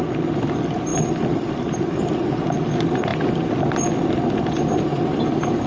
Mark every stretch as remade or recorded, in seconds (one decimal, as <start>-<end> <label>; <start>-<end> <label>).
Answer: 0.0-5.7 recorded

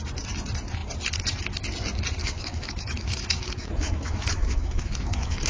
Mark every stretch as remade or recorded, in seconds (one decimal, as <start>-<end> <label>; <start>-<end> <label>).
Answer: 0.0-2.2 recorded; 2.2-5.5 remade